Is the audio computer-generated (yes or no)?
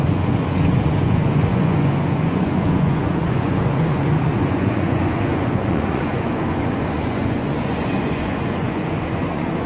yes